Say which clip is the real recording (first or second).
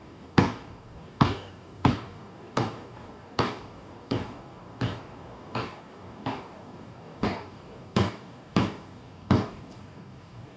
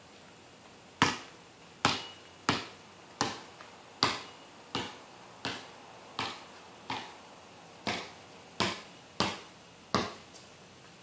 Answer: second